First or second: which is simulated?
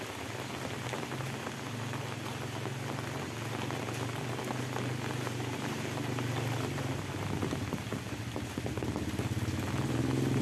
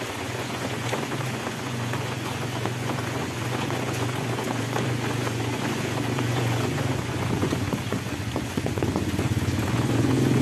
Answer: second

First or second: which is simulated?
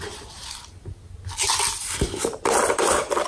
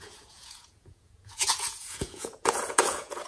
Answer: second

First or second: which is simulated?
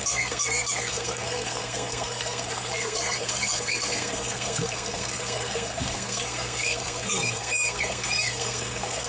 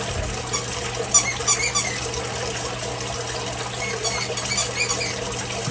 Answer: first